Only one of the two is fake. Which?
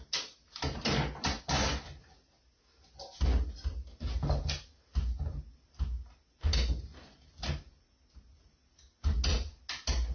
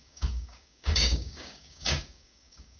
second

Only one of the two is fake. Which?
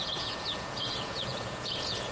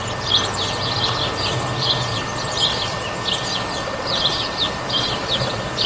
first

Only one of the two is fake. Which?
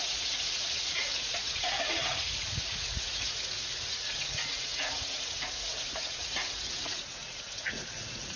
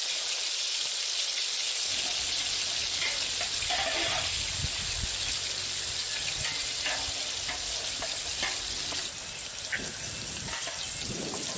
first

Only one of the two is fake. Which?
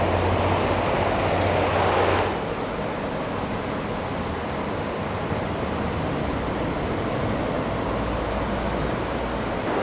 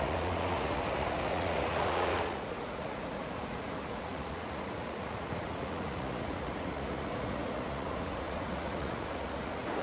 second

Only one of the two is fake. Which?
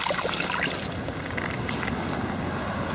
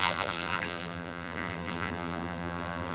second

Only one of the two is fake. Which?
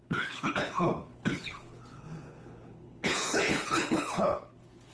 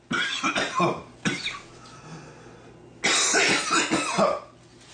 first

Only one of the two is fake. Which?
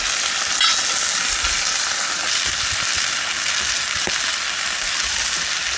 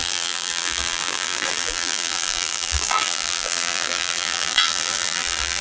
second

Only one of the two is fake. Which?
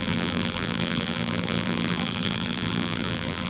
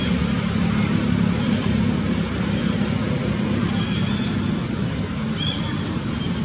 first